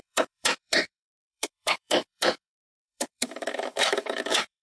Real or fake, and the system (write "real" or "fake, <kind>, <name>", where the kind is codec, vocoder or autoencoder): fake, autoencoder, DAC-VAE